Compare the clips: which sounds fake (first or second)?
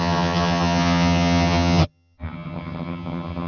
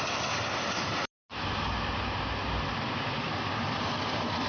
first